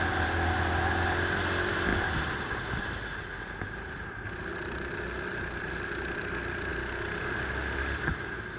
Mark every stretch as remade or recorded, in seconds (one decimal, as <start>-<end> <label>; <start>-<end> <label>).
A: 0.0-8.6 recorded